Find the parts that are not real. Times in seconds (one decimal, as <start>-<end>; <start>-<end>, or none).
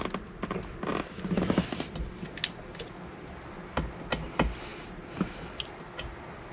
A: none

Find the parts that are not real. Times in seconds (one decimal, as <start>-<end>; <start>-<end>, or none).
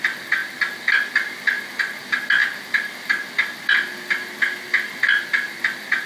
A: none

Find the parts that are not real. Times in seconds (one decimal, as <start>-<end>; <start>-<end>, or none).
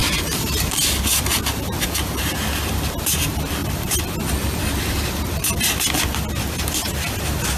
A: 0.0-0.6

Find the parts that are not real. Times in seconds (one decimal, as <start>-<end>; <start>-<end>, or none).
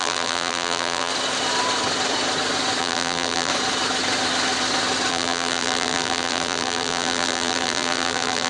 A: 0.0-1.1; 2.8-3.5; 5.1-8.5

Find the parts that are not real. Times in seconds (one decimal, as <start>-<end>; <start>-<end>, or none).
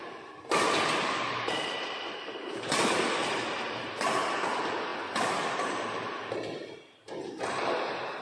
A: 0.0-3.9